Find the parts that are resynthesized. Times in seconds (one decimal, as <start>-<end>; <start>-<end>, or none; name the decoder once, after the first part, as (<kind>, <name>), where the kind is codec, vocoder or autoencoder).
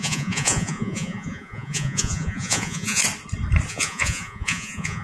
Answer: 0.0-3.0 (vocoder, Vocos); 3.7-5.0